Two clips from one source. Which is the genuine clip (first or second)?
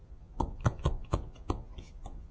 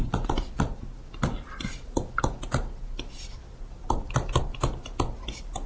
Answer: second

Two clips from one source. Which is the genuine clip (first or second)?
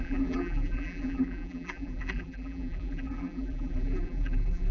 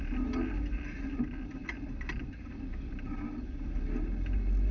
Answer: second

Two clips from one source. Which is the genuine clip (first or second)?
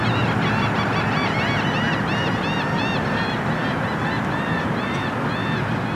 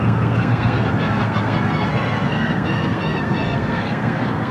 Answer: first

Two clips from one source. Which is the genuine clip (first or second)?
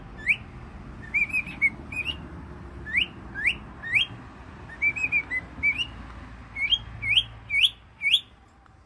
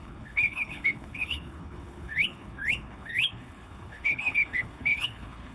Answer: first